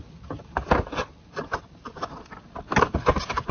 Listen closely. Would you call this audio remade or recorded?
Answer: recorded